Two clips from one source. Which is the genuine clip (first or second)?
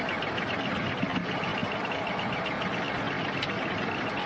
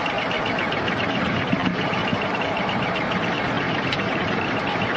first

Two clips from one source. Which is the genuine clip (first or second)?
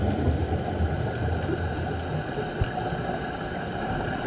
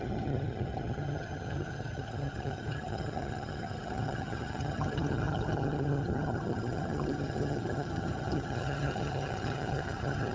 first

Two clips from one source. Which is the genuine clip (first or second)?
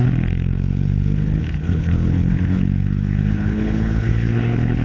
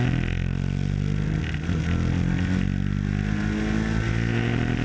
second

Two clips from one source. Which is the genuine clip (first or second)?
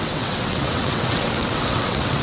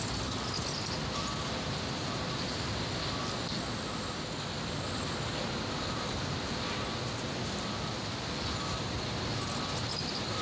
second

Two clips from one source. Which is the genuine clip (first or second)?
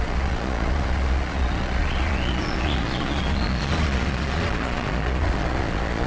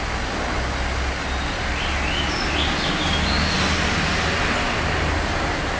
second